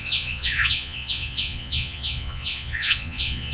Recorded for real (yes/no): no